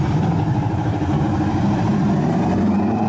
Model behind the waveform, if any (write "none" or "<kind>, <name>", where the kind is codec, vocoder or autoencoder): vocoder, BigVGAN v2